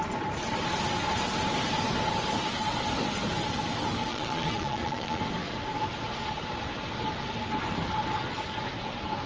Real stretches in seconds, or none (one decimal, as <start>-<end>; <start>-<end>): 0.0-4.1; 5.2-9.3

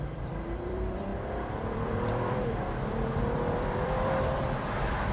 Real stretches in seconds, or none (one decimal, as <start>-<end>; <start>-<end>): none